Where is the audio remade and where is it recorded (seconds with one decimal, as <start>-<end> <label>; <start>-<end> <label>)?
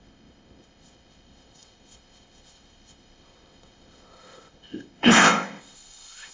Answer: 0.0-6.3 remade